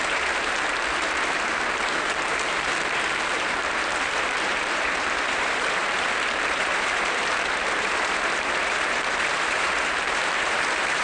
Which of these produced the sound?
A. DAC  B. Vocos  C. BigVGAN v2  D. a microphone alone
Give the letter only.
C